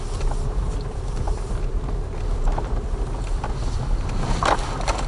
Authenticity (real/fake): real